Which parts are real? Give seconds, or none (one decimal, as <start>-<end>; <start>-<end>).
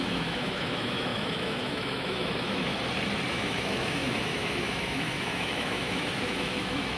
2.7-3.3